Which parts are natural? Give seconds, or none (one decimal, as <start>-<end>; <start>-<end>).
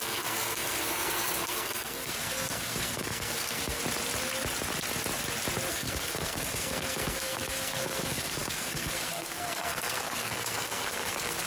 3.8-5.7